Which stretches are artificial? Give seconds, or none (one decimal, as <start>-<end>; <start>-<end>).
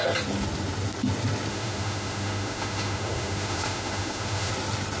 1.5-4.5